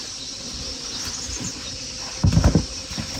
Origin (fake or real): real